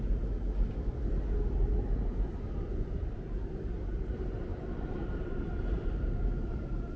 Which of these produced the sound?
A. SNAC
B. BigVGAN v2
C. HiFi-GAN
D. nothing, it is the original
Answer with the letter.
D